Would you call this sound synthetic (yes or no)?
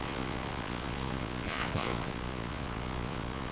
yes